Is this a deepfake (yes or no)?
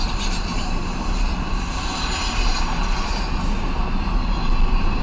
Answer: no